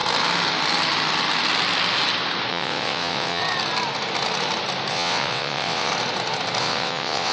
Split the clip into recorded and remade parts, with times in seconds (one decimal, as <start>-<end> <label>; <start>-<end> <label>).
0.0-2.5 recorded; 2.5-3.4 remade; 3.4-4.9 recorded; 4.9-5.9 remade; 5.9-6.6 recorded; 6.6-7.3 remade